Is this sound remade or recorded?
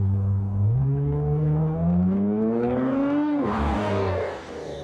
remade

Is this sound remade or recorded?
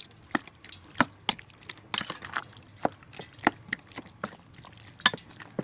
recorded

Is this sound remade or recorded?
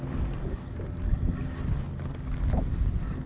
recorded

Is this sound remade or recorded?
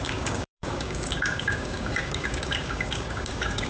remade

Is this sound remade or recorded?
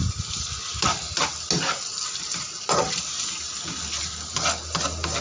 recorded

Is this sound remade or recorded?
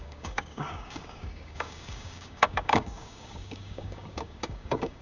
remade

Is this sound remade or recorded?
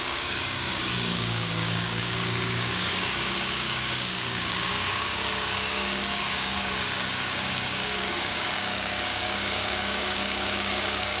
remade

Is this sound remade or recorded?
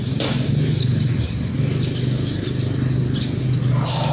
recorded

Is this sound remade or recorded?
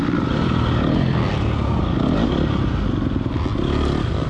recorded